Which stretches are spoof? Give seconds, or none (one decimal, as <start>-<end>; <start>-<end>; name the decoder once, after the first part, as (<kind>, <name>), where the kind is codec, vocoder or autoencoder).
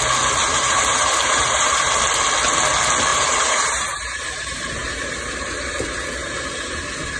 0.4-1.9 (vocoder, BigVGAN v2); 3.1-5.8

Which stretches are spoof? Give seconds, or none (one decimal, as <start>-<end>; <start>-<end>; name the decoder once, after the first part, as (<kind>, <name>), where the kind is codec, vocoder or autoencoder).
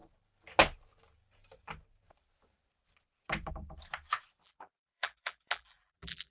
4.4-6.3 (vocoder, BigVGAN v2)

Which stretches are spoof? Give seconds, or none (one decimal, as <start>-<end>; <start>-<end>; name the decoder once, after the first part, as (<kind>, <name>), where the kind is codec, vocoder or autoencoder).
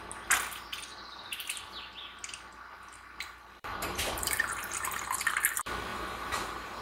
3.7-5.2 (vocoder, BigVGAN v2); 5.9-6.8